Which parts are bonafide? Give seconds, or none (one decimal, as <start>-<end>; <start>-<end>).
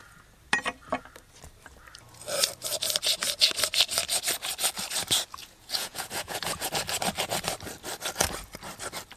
0.0-5.4; 6.7-9.2